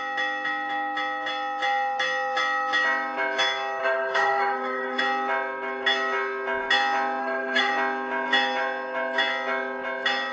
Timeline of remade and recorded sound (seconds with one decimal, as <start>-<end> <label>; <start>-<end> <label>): 0.0-3.8 recorded; 3.8-5.0 remade; 5.0-7.2 recorded; 7.2-7.7 remade; 7.7-10.3 recorded